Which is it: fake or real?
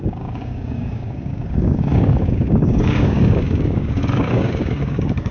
fake